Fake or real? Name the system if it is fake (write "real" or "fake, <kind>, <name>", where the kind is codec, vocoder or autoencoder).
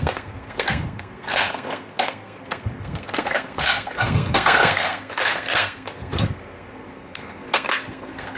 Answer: fake, codec, SNAC